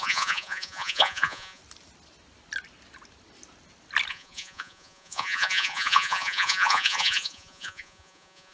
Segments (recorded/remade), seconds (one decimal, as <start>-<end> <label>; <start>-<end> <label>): 0.0-1.6 remade; 1.6-4.1 recorded; 4.1-8.5 remade

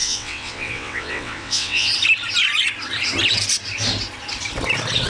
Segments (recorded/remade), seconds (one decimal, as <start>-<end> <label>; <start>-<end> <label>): 0.0-1.9 remade; 1.9-5.1 recorded

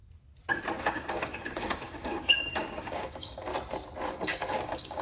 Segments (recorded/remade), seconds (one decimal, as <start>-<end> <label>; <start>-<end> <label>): 0.0-0.8 recorded; 0.8-3.5 remade; 3.5-4.1 recorded; 4.1-5.0 remade

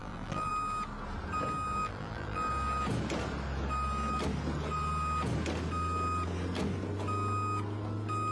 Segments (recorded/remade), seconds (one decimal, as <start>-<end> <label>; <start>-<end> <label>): 0.0-0.5 remade; 0.5-1.8 recorded; 1.8-2.5 remade; 2.5-8.3 recorded

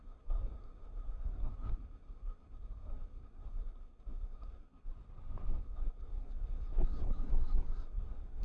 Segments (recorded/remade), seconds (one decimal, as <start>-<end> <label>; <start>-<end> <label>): 0.0-4.9 remade; 4.9-5.6 recorded; 5.6-8.4 remade

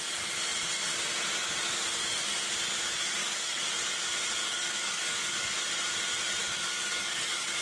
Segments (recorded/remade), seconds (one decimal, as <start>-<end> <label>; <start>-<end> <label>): 0.0-3.2 recorded; 3.2-3.7 remade; 3.7-4.4 recorded; 4.4-5.5 remade; 5.5-6.4 recorded; 6.4-7.6 remade